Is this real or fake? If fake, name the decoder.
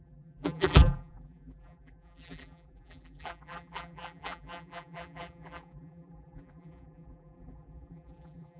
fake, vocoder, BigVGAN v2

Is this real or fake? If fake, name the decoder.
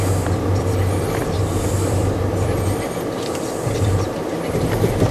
fake, vocoder, BigVGAN v2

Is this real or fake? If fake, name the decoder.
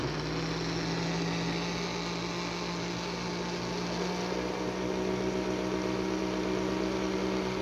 real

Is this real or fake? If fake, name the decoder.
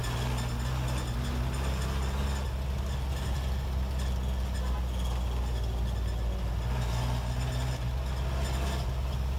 real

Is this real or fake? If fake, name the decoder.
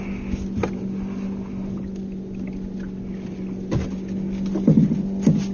real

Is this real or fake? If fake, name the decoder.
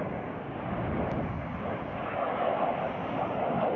real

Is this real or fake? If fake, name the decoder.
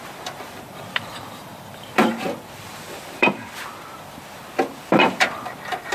fake, vocoder, BigVGAN v2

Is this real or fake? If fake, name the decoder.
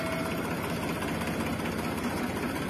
real